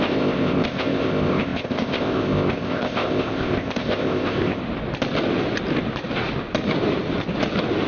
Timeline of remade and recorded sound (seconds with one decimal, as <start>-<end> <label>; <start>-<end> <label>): 0.0-4.6 remade; 4.6-7.9 recorded